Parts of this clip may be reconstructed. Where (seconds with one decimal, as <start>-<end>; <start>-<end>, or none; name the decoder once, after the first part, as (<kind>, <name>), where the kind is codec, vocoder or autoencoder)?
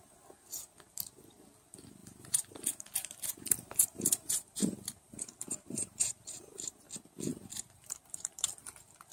2.0-6.8 (vocoder, BigVGAN v2); 7.3-8.5